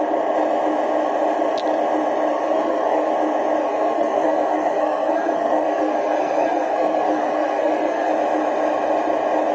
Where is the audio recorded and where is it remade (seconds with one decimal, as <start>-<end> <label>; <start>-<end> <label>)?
0.0-2.3 recorded; 2.3-3.1 remade; 3.1-3.6 recorded; 3.6-8.1 remade; 8.1-9.5 recorded